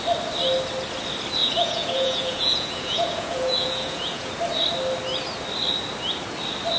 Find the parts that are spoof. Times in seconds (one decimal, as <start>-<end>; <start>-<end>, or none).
1.4-4.3